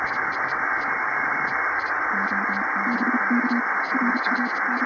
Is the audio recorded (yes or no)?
no